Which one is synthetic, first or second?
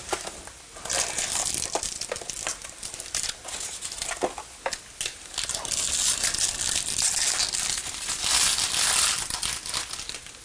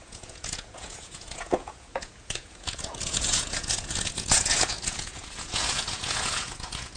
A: second